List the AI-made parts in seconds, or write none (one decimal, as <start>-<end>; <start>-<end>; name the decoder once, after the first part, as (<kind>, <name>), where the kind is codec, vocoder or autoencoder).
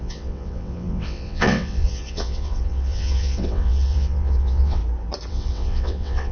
0.0-4.8 (vocoder, WaveNeXt); 5.3-6.3